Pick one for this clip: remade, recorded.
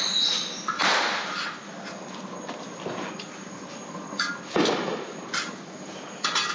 recorded